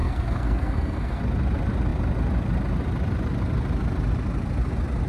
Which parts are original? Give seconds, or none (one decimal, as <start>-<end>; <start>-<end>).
1.2-5.1